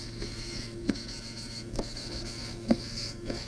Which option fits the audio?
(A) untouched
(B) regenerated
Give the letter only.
B